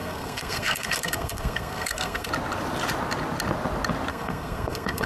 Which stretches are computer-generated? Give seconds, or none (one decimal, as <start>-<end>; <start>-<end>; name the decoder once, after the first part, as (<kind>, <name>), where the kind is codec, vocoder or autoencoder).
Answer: 0.0-2.3 (codec, SNAC); 4.1-5.1